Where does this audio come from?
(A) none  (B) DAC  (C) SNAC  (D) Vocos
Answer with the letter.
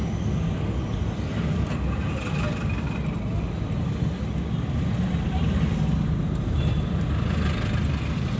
A